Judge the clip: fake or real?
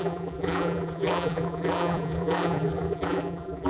fake